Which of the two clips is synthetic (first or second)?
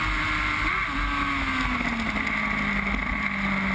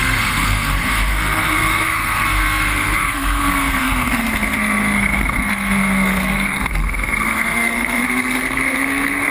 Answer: second